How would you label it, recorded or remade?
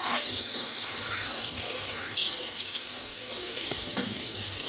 remade